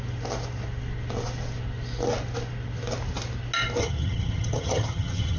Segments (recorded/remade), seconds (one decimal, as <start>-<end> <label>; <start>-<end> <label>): 0.0-3.8 recorded; 3.8-5.4 remade